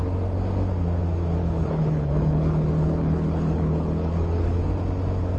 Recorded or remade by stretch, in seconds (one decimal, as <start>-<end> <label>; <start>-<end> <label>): 0.0-1.4 recorded; 1.4-4.6 remade; 4.6-5.4 recorded